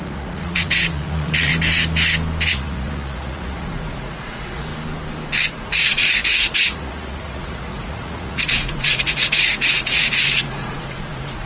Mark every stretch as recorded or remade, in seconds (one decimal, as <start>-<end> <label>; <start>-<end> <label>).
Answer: 0.0-1.5 remade; 1.5-2.5 recorded; 2.5-4.7 remade; 4.7-5.5 recorded; 5.5-11.5 remade